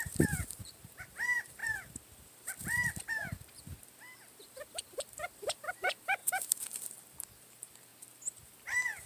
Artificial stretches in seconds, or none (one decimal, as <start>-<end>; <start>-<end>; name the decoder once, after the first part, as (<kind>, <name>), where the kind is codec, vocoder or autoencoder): 0.0-1.6 (vocoder, BigVGAN v2); 4.5-7.9; 8.4-9.1